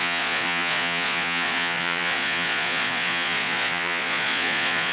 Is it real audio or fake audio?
fake